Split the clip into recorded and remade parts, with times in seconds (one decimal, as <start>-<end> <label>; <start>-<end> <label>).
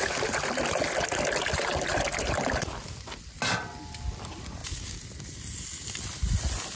0.0-6.8 recorded